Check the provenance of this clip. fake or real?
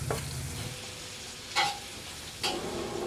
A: real